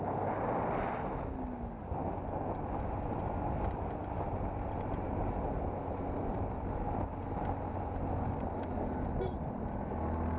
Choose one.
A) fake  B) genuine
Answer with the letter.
B